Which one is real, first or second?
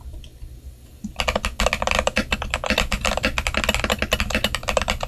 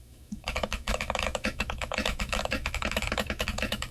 first